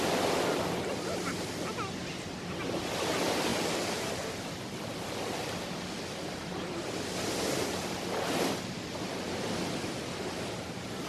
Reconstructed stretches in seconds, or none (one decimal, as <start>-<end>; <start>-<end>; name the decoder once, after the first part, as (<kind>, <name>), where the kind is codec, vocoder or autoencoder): 3.5-4.5 (vocoder, BigVGAN v2)